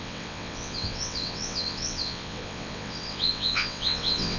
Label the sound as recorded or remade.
remade